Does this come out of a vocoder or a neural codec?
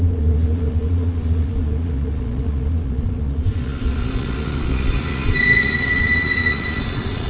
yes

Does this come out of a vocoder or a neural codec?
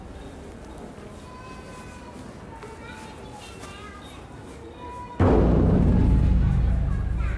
no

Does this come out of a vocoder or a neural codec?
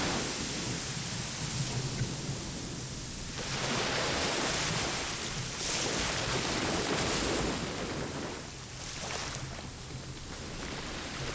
no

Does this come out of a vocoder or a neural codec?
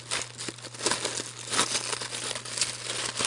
no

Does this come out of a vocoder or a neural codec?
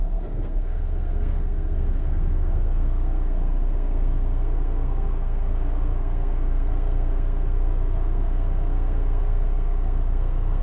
yes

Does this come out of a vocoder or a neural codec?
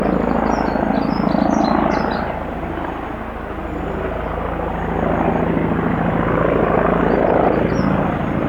no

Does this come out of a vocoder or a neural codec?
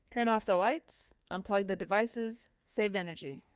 yes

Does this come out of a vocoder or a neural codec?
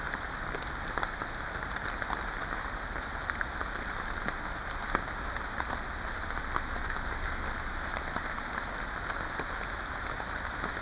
no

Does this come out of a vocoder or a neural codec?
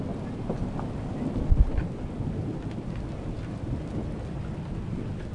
no